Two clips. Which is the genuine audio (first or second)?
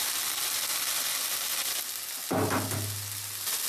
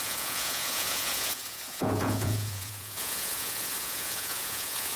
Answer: first